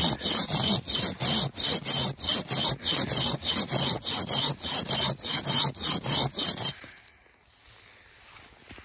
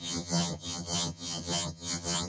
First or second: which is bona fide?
first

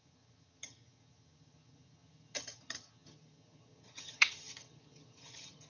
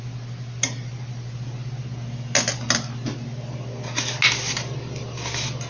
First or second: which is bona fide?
second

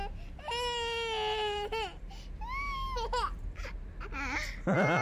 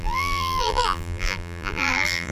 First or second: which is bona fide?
first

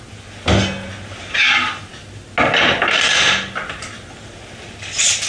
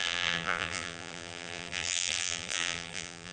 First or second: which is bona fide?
first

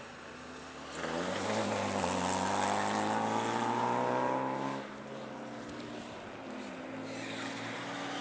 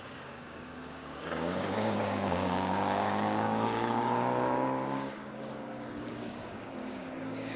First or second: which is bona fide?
first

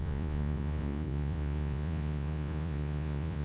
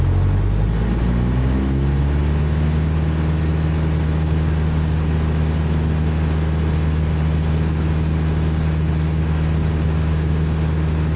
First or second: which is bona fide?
second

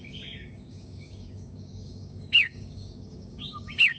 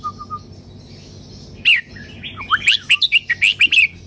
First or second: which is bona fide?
second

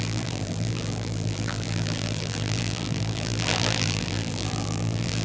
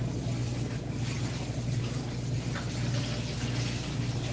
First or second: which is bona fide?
second